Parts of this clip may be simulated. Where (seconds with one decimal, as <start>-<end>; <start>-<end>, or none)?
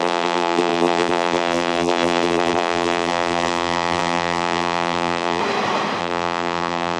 0.0-5.4; 6.0-7.0